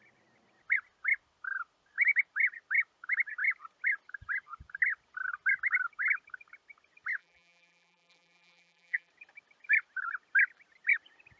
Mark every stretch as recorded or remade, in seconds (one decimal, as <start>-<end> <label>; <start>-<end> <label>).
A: 0.0-7.2 recorded; 7.2-9.1 remade; 9.1-11.4 recorded